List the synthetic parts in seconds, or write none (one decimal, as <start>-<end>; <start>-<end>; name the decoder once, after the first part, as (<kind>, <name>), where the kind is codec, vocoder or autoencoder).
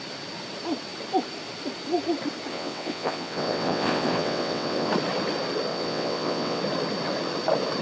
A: 2.5-4.9 (vocoder, WaveNeXt); 5.7-6.6